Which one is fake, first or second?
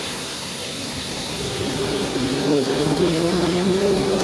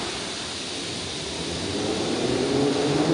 first